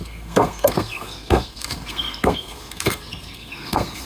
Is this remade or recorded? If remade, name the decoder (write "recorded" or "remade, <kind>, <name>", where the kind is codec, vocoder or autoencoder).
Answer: remade, codec, SNAC